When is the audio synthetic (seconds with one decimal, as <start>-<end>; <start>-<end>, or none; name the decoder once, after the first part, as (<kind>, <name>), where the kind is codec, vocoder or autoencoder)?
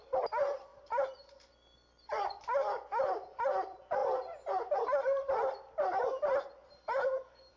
0.7-3.1 (vocoder, BigVGAN v2); 6.6-7.6